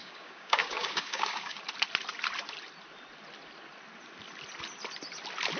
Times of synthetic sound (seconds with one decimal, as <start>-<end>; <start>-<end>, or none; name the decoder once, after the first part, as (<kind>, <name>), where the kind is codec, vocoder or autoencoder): 0.0-1.6 (codec, DAC)